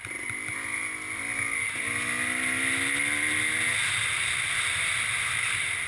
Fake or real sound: real